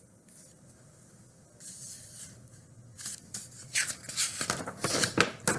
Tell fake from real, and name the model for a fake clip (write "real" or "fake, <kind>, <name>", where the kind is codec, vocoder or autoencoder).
real